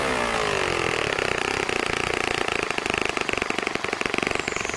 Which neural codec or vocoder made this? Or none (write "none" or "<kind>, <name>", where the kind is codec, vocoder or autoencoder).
none